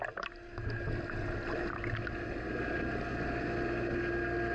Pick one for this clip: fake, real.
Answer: real